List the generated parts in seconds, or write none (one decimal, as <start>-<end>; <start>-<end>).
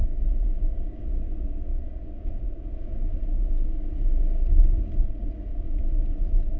0.0-0.9; 1.7-3.5; 5.5-6.0